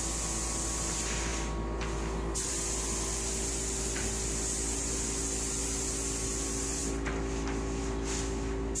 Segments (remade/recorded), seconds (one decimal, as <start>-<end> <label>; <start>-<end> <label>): 0.0-1.3 recorded; 1.3-2.8 remade; 2.8-6.8 recorded; 6.8-8.8 remade